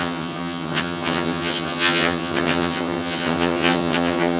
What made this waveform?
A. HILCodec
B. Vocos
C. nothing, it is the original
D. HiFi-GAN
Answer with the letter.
D